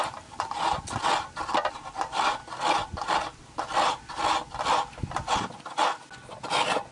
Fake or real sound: real